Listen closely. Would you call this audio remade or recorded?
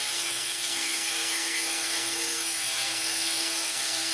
remade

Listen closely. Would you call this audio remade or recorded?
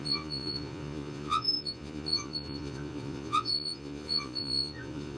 remade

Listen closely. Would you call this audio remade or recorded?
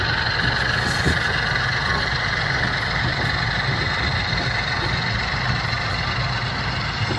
recorded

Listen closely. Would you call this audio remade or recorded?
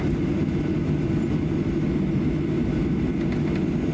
recorded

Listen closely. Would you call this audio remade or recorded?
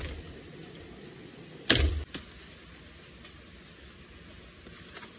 recorded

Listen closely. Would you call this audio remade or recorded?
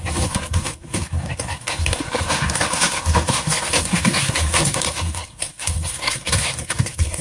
remade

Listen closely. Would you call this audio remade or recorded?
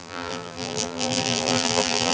remade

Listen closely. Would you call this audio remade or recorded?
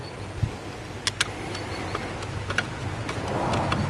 recorded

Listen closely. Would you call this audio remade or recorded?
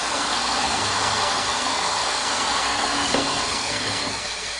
remade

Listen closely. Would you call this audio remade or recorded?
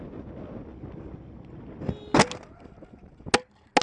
recorded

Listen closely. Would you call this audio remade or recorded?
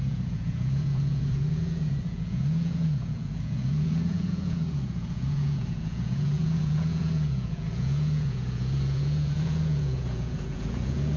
remade